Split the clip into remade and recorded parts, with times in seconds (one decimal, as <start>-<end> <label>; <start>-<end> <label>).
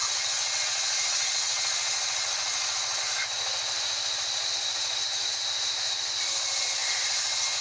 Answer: 0.0-3.0 remade; 3.0-7.6 recorded